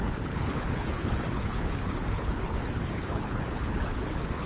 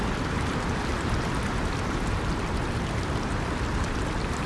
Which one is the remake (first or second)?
first